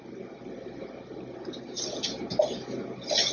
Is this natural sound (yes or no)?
yes